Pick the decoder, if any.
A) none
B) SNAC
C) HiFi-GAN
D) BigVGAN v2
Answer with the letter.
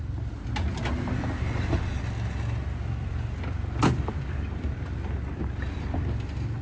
A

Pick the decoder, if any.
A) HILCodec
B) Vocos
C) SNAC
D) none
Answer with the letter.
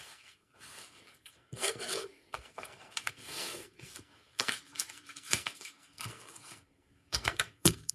C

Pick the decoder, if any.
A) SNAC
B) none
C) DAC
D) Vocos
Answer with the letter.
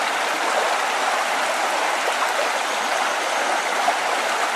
B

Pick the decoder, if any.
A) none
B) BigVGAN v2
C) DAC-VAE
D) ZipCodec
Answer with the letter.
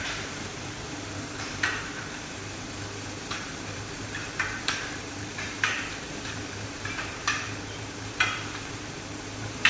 B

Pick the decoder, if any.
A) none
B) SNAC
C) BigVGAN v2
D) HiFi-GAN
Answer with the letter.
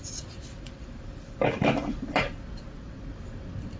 A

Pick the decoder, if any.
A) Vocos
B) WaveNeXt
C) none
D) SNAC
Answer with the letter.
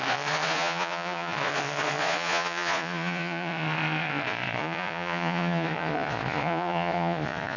A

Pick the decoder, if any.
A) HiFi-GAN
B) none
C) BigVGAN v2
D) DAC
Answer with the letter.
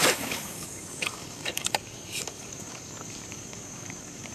D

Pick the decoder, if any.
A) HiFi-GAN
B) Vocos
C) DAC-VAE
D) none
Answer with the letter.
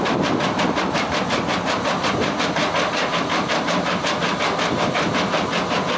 D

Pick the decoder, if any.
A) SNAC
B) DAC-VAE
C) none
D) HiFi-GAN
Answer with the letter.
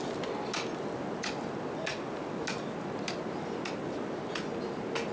C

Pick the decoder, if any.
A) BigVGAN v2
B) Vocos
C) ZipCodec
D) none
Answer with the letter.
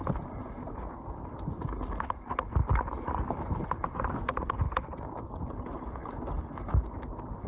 D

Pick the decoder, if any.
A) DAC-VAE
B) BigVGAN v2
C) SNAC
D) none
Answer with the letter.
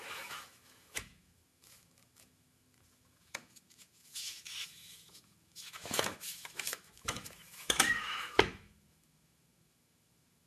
A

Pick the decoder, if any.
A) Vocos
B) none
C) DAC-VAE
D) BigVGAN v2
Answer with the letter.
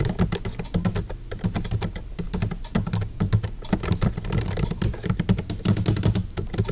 B